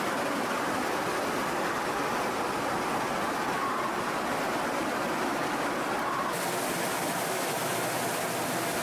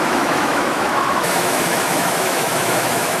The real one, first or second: first